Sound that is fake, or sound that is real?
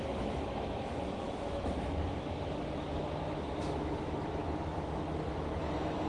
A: fake